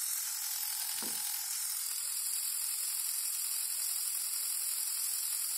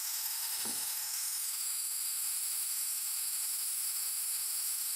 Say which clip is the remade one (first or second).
second